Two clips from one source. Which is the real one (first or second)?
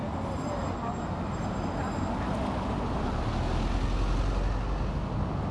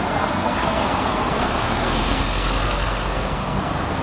first